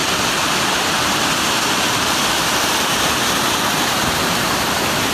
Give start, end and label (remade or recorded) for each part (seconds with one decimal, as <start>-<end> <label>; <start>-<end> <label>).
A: 0.0-5.1 recorded